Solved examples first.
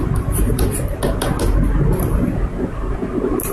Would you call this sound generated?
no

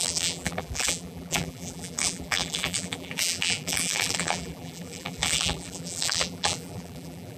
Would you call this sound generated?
yes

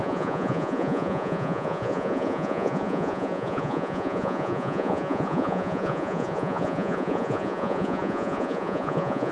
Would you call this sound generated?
yes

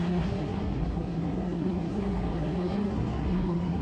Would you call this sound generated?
yes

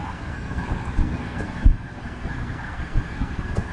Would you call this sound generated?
yes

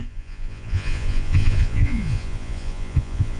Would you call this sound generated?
yes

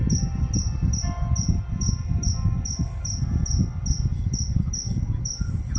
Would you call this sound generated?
no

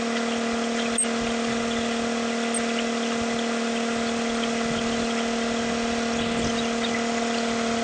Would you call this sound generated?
no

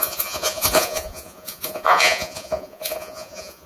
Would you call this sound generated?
yes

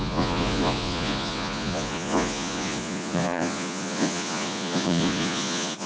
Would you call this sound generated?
yes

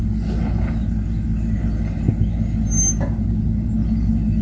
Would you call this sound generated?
no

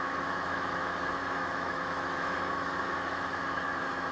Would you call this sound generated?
yes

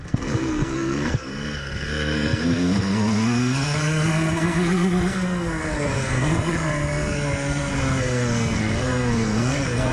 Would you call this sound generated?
yes